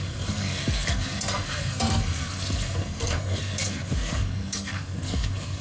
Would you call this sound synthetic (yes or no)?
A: yes